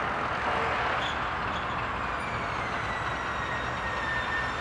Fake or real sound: real